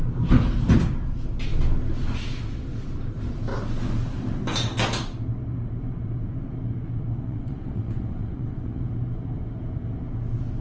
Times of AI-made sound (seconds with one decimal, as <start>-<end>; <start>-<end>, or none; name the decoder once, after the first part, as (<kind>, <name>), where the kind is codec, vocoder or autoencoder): 7.2-8.8 (vocoder, WaveNeXt)